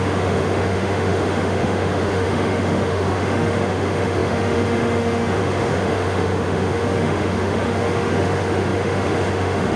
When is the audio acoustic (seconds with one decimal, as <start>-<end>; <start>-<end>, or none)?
none